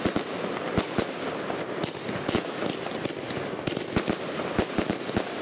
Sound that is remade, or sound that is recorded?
recorded